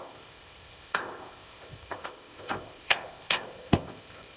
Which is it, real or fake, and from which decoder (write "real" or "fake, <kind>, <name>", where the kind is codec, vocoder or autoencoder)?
fake, codec, ZipCodec